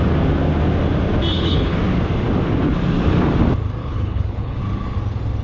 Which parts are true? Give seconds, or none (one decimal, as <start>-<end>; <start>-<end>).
0.0-1.3; 1.8-3.8; 4.6-5.4